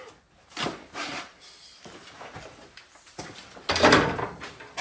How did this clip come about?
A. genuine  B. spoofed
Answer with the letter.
A